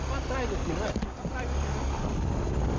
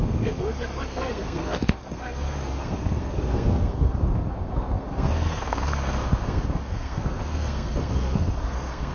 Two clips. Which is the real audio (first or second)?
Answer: first